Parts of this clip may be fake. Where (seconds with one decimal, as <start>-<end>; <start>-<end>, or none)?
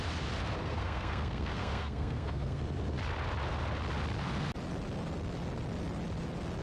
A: 0.6-2.6